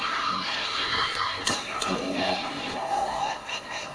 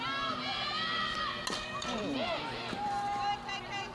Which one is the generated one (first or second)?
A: first